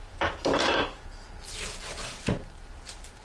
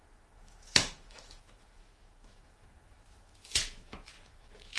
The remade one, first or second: second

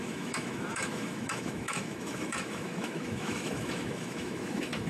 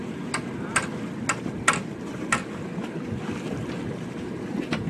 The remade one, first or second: first